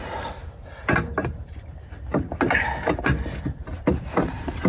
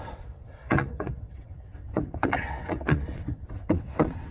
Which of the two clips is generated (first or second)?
second